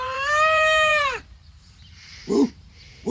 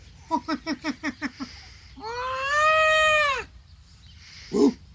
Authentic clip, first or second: second